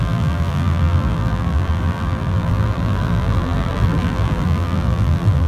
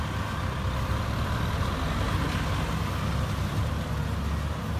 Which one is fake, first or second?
first